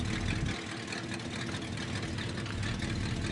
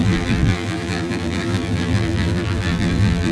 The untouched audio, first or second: first